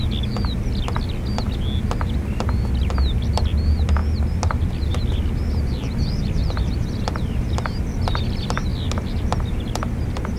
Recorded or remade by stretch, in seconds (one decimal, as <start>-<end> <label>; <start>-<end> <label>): 0.0-6.4 recorded; 6.4-7.4 remade; 7.4-10.4 recorded